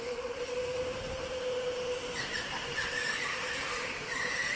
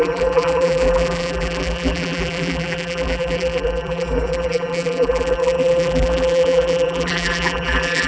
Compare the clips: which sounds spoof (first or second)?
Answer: second